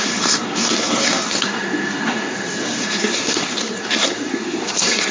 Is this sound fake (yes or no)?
yes